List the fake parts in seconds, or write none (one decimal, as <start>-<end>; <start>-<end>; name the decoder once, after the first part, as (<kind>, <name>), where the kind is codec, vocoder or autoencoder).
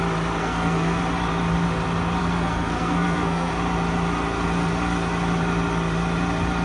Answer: 0.4-1.0 (codec, SNAC); 2.2-3.5